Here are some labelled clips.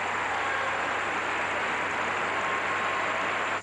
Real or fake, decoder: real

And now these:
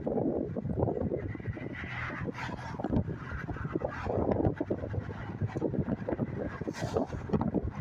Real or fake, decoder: real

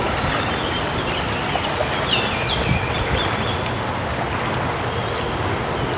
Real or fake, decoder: real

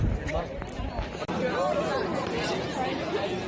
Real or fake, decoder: real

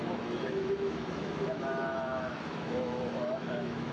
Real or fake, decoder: fake, autoencoder, DAC-VAE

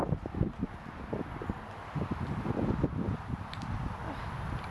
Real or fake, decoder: real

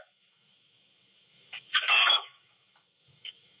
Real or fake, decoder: fake, autoencoder, DAC-VAE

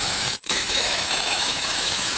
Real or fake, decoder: fake, autoencoder, DAC-VAE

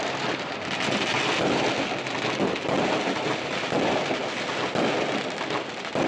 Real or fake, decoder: real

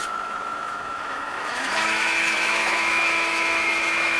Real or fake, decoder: fake, autoencoder, DAC-VAE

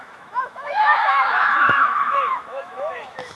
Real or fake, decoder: fake, autoencoder, DAC-VAE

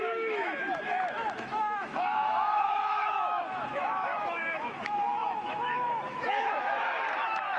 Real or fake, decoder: fake, autoencoder, DAC-VAE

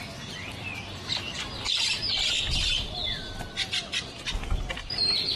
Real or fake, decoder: real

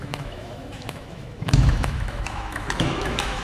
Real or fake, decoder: fake, autoencoder, DAC-VAE